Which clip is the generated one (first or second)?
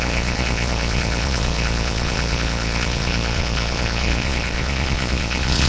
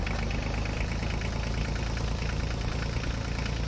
first